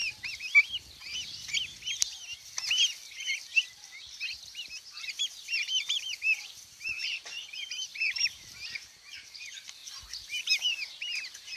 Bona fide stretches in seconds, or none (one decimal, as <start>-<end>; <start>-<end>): 0.0-5.2; 9.8-10.4